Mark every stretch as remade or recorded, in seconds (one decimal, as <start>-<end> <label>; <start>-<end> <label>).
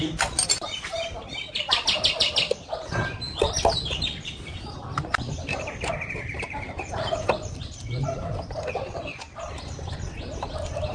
0.0-10.9 recorded